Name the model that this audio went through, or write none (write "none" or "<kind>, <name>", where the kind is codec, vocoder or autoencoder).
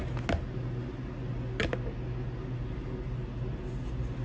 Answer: none